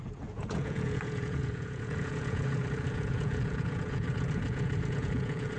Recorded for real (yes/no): no